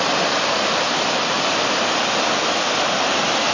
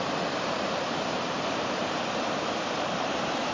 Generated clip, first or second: second